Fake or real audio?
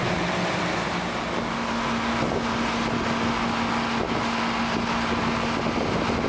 real